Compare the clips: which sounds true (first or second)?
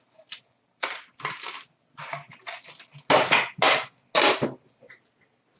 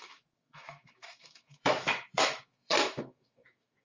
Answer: first